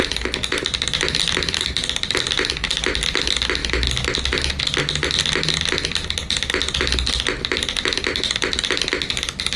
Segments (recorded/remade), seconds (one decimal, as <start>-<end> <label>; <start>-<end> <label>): 0.0-9.6 recorded